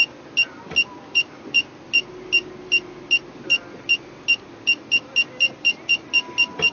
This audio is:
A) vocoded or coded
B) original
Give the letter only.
B